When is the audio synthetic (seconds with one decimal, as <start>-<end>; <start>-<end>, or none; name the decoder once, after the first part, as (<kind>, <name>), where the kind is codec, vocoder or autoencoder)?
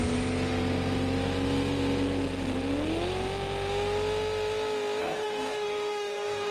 5.0-6.5 (codec, DAC)